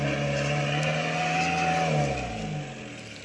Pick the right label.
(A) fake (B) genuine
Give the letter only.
B